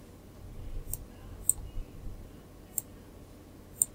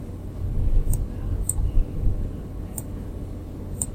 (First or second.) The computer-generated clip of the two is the second